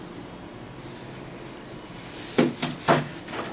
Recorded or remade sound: recorded